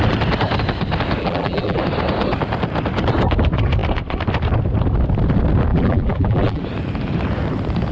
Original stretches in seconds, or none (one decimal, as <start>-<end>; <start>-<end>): 0.0-1.2; 1.8-5.7; 6.6-7.9